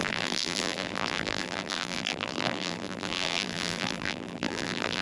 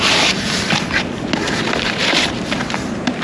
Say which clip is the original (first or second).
second